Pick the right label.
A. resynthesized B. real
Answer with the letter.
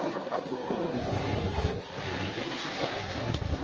A